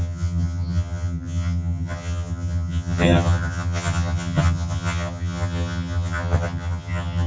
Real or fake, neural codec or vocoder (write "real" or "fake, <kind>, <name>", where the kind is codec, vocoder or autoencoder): fake, vocoder, HiFi-GAN